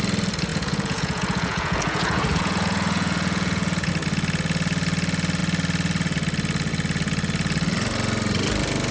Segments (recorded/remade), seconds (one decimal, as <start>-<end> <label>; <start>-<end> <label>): 0.0-0.5 recorded; 0.5-3.9 remade; 3.9-8.9 recorded